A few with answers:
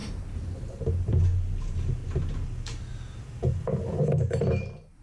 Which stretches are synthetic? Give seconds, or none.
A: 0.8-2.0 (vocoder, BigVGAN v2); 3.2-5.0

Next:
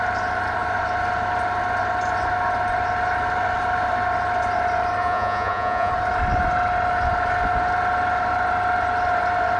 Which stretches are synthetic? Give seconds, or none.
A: 5.0-5.9 (vocoder, Vocos)

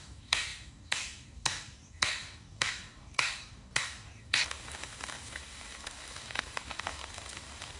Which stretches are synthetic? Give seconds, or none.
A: 0.0-7.8 (codec, DAC)

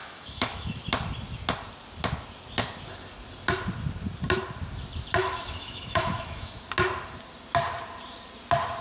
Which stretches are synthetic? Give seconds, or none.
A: 0.0-0.8 (autoencoder, DAC-VAE); 5.2-6.6

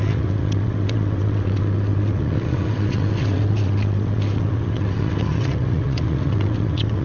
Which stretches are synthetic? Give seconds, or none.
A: 0.0-7.0 (vocoder, WaveNeXt)

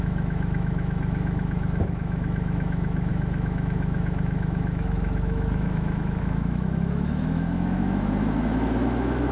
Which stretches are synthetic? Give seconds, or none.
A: 0.0-9.3 (autoencoder, DAC-VAE)

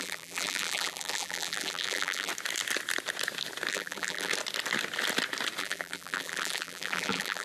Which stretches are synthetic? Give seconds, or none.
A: 0.0-2.3 (vocoder, BigVGAN v2); 3.7-4.3; 5.6-7.4

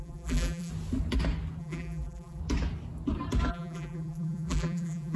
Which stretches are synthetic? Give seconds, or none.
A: 0.0-0.7 (vocoder, BigVGAN v2); 1.6-2.4; 3.5-5.2